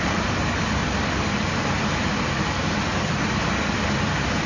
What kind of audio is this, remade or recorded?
recorded